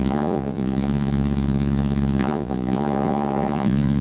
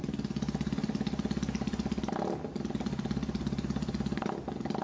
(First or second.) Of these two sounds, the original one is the second